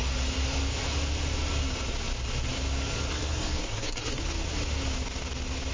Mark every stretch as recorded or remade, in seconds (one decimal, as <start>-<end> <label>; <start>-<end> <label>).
0.0-3.1 recorded; 3.1-4.2 remade; 4.2-5.7 recorded